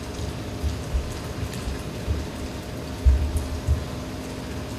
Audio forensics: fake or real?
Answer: real